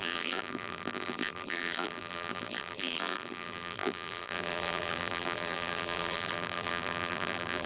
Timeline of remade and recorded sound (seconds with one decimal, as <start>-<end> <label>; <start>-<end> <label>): 0.0-7.7 remade